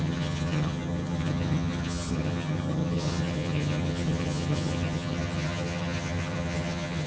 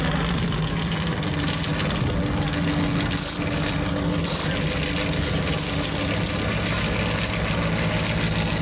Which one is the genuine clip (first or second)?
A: second